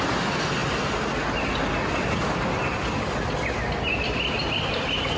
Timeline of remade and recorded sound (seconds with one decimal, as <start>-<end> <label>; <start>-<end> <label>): 0.0-5.2 recorded